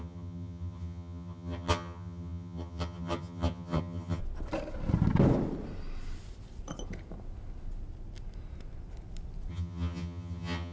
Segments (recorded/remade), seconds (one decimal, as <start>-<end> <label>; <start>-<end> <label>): 0.0-4.2 remade; 4.2-9.5 recorded; 9.5-10.7 remade